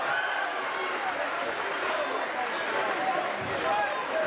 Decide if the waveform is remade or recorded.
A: recorded